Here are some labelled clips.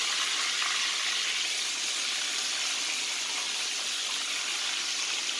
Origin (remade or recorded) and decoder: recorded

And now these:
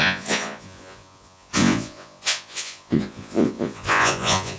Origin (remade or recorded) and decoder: remade, vocoder, Vocos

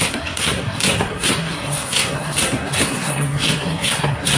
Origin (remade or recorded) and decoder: remade, codec, SNAC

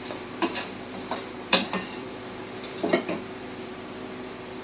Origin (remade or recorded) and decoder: remade, vocoder, BigVGAN v2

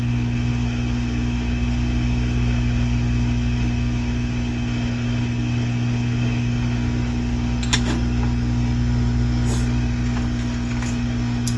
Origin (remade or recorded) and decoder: recorded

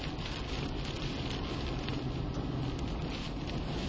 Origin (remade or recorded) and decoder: recorded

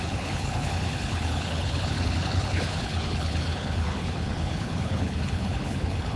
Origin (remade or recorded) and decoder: remade, codec, HILCodec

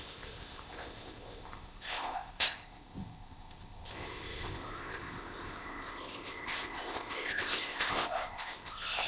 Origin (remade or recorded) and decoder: remade, codec, ZipCodec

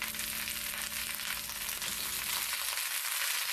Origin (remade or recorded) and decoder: recorded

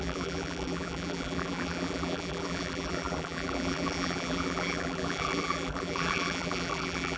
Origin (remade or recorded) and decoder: remade, vocoder, BigVGAN v2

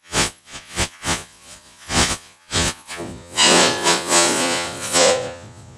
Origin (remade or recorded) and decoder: remade, vocoder, Vocos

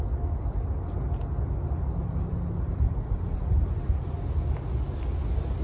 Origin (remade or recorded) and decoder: recorded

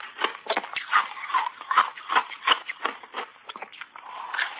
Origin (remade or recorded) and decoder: remade, vocoder, BigVGAN v2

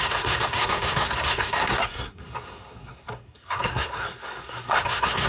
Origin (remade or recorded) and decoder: remade, codec, SNAC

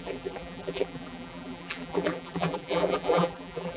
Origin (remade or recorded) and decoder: remade, vocoder, BigVGAN v2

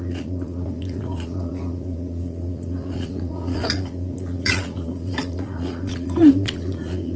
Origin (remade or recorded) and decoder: remade, vocoder, Vocos